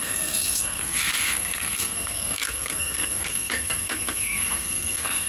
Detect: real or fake fake